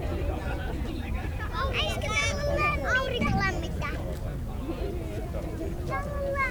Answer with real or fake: real